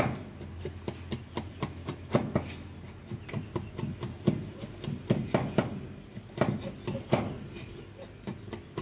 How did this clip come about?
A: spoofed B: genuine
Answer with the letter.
B